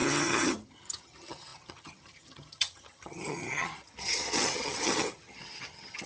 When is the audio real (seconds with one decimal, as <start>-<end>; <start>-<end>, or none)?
none